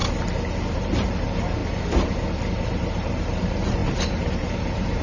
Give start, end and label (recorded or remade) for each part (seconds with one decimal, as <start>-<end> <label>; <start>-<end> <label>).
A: 0.0-0.7 recorded; 0.7-1.6 remade; 1.6-2.5 recorded; 2.5-3.8 remade; 3.8-4.3 recorded; 4.3-5.0 remade